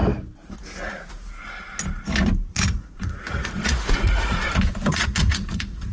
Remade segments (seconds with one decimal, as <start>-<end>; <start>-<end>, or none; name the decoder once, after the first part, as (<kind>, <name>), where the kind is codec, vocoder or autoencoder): 2.5-4.4 (vocoder, Vocos); 4.9-5.9